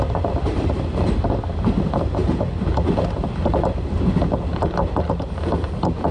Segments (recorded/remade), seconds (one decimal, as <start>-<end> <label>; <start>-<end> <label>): 0.0-6.1 recorded